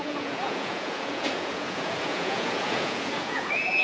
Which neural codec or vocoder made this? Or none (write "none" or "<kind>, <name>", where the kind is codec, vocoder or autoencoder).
vocoder, Vocos